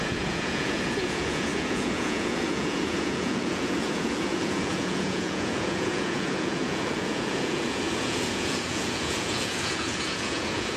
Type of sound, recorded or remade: remade